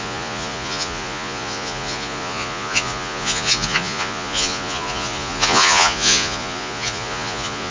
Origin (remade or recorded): remade